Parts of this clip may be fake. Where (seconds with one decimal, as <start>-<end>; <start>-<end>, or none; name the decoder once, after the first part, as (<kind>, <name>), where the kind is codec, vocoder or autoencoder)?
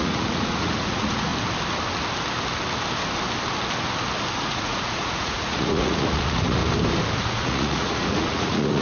0.0-1.3 (vocoder, Vocos); 4.4-6.6; 7.2-8.8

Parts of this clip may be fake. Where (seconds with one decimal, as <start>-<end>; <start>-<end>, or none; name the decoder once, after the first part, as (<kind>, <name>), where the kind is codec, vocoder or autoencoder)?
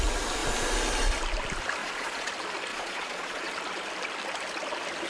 1.8-2.3 (vocoder, Vocos); 2.7-3.5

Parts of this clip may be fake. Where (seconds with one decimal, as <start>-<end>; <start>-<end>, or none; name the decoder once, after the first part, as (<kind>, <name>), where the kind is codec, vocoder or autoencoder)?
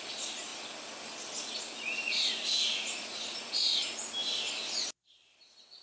2.7-3.8 (vocoder, Vocos)